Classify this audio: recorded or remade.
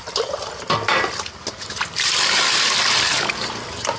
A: recorded